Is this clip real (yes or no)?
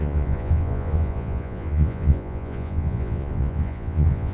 no